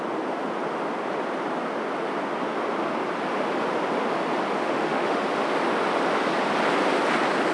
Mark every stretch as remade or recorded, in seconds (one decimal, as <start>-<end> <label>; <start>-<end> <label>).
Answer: 0.0-4.6 recorded; 4.6-5.2 remade; 5.2-7.5 recorded